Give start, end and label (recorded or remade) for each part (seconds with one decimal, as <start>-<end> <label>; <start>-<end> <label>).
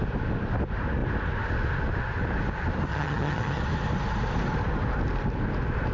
0.0-2.9 recorded; 2.9-3.6 remade; 3.6-5.9 recorded